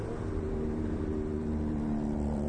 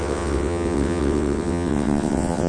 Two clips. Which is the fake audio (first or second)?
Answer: second